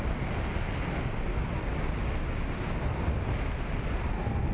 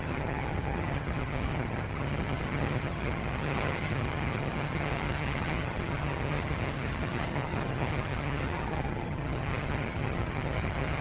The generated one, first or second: second